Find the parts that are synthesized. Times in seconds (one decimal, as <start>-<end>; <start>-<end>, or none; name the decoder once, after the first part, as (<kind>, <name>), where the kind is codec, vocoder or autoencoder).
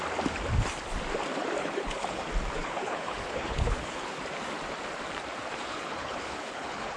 1.6-2.2 (codec, HILCodec); 2.6-4.2; 5.7-7.0